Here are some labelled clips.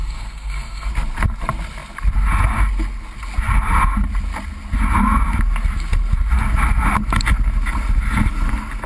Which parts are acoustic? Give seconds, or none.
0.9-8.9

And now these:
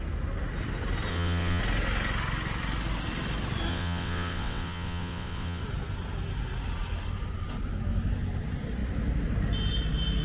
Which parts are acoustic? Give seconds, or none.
0.0-1.1; 1.6-3.7; 5.6-10.2

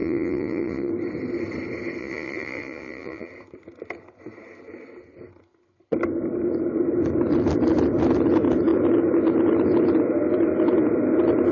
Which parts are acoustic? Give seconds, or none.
0.9-2.0; 3.3-11.5

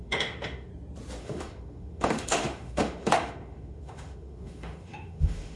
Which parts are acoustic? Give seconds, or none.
0.7-1.2

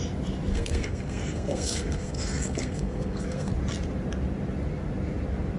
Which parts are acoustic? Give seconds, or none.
0.0-0.5; 3.5-5.6

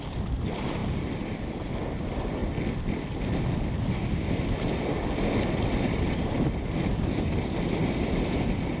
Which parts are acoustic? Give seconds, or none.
0.8-2.0; 2.4-6.4

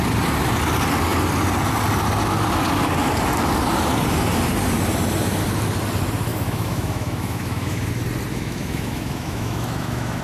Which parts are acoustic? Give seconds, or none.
0.0-6.3; 7.9-8.3